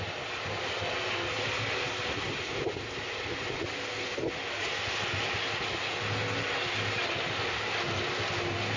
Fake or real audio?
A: real